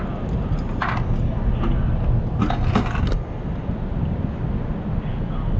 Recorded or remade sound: recorded